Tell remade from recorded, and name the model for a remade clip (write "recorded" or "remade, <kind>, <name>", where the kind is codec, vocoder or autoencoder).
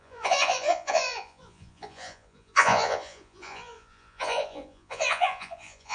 remade, vocoder, Vocos